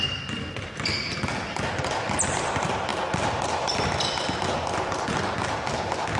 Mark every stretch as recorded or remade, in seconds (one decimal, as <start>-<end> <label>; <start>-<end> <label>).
0.0-6.2 recorded